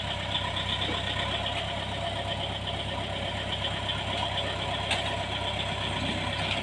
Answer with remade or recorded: recorded